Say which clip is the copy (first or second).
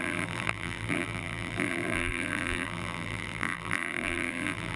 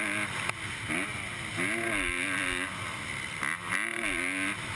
first